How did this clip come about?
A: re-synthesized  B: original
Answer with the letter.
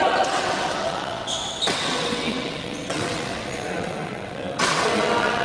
A